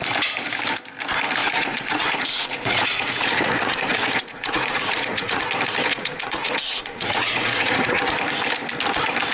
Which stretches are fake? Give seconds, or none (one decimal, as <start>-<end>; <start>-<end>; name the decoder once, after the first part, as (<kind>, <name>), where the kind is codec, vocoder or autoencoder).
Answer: 1.4-5.4 (vocoder, Vocos); 5.9-8.0